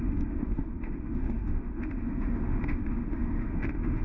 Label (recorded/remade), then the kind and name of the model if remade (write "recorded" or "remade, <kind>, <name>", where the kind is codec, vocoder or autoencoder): remade, autoencoder, DAC-VAE